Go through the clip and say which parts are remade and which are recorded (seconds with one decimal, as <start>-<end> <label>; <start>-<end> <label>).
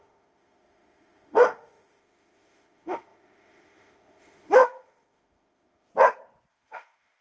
0.0-5.9 remade; 5.9-6.5 recorded; 6.5-7.2 remade